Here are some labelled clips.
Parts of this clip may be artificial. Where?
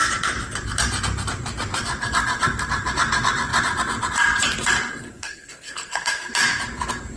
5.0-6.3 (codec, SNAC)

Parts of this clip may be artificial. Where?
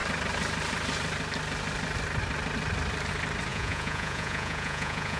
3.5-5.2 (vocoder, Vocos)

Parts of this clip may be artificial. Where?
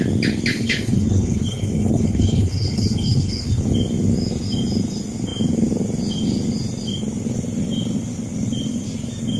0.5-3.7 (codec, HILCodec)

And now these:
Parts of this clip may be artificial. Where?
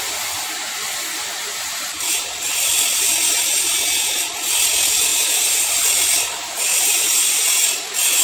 1.4-2.5 (vocoder, BigVGAN v2); 5.1-7.3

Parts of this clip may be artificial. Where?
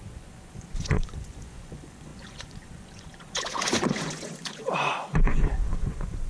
0.0-6.3 (vocoder, Vocos)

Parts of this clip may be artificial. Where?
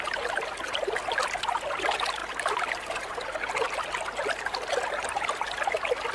none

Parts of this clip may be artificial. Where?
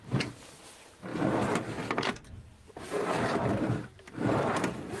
0.0-1.1 (vocoder, BigVGAN v2); 2.4-5.0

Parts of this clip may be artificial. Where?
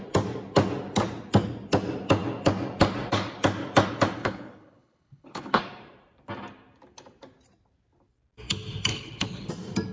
4.2-5.6 (codec, HILCodec); 8.9-9.5